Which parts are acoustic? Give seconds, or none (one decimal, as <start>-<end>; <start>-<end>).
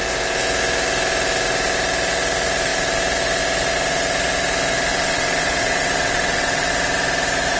0.0-4.9; 6.7-7.6